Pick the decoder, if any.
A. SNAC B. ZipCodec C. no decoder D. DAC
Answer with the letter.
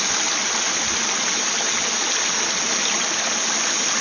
C